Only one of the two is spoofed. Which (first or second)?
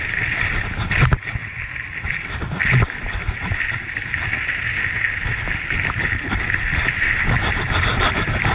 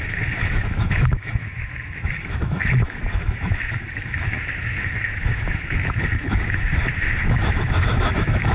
second